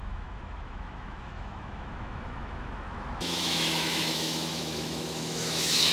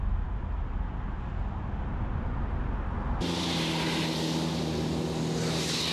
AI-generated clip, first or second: first